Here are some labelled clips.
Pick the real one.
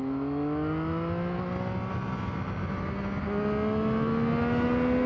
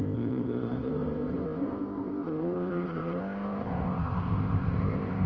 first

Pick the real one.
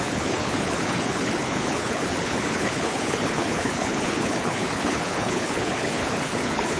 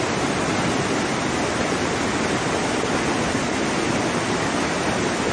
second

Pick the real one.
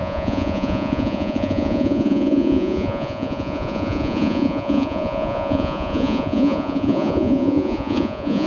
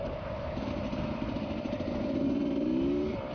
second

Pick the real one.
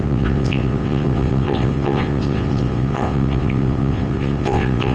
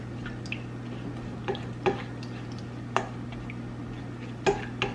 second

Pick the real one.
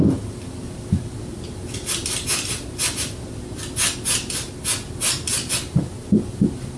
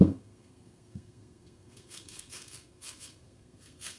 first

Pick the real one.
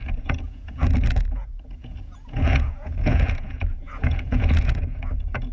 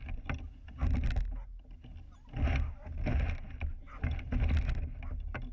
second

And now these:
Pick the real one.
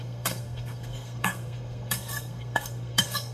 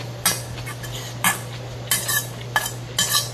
second